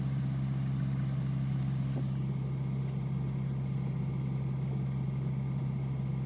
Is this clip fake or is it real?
real